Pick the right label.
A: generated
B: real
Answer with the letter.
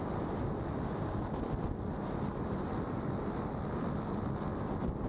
B